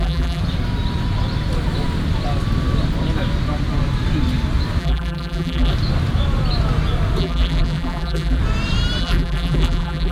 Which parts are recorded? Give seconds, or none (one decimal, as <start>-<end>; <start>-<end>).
0.4-4.8; 5.7-7.2; 8.4-9.0

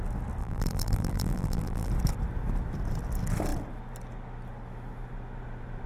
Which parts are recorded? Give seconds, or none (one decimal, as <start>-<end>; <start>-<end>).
0.0-0.4; 1.9-5.9

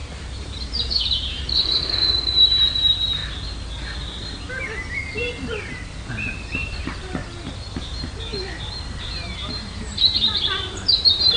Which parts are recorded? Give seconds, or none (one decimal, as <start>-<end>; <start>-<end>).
3.2-6.1; 7.2-7.8; 8.3-9.0

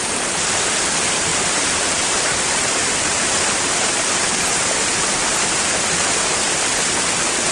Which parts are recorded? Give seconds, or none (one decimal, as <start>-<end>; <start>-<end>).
0.0-1.3; 5.4-7.5

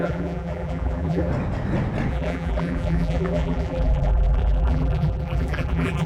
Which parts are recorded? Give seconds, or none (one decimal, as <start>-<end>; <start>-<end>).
1.3-2.1

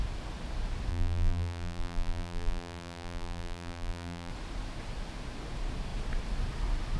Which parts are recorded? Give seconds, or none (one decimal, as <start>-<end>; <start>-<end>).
0.0-0.9; 4.3-7.0